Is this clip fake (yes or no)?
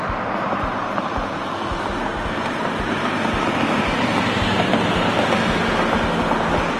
no